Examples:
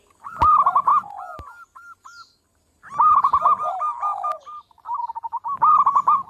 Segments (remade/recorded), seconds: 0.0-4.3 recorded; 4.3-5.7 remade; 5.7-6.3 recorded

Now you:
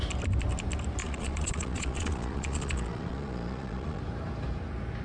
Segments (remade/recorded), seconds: 0.0-1.0 recorded; 1.0-4.0 remade; 4.0-5.0 recorded

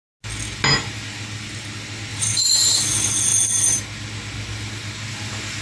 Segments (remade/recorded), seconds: 0.0-2.1 recorded; 2.1-2.7 remade; 2.7-5.6 recorded